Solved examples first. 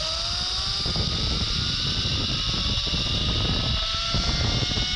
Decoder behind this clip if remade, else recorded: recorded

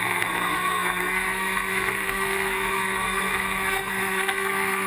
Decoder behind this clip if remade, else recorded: remade, codec, SNAC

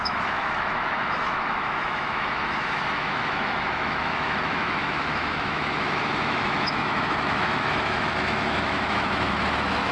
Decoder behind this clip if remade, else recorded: remade, autoencoder, DAC-VAE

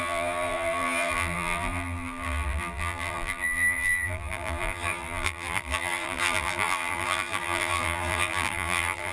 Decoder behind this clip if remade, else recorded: remade, vocoder, BigVGAN v2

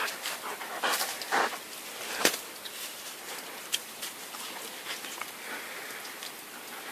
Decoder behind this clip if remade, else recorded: remade, vocoder, BigVGAN v2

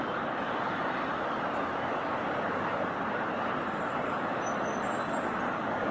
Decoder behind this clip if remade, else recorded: recorded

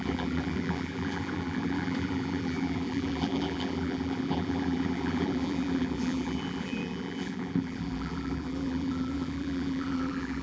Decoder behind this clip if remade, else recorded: remade, vocoder, BigVGAN v2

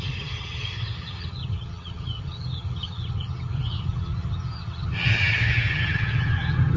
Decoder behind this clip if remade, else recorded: remade, vocoder, HiFi-GAN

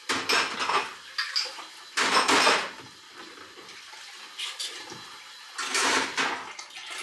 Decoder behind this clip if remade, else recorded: recorded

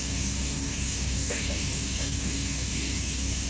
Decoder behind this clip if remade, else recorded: remade, codec, DAC